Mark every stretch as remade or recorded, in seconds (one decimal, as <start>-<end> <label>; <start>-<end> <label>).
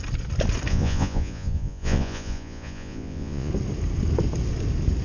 0.0-0.7 recorded; 0.7-3.5 remade; 3.5-5.0 recorded